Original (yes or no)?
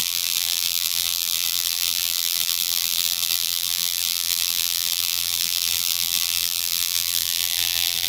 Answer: no